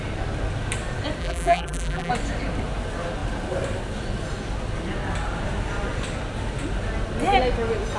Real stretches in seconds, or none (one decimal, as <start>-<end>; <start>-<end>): 0.0-1.2; 2.1-8.0